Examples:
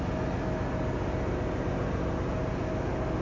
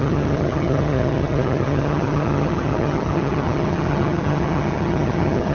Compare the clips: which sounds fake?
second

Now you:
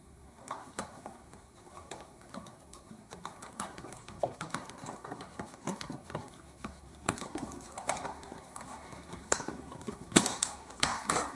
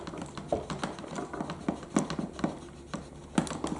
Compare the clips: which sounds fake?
first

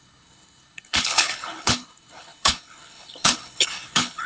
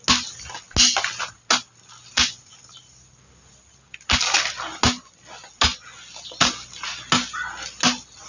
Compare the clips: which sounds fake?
first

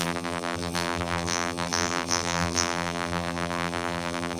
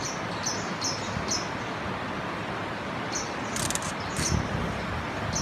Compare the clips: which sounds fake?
first